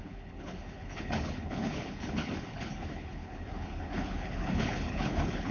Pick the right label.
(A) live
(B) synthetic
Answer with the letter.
B